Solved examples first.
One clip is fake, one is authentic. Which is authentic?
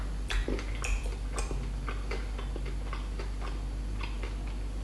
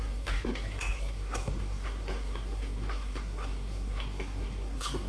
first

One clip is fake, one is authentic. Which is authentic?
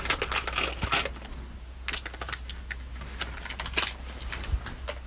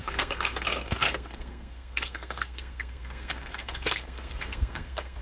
first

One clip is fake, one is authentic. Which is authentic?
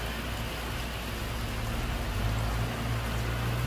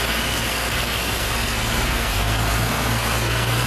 first